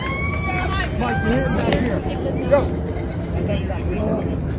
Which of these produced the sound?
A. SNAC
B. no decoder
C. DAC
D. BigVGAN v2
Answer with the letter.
B